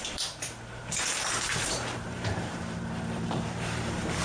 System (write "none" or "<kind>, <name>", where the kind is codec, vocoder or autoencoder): vocoder, BigVGAN v2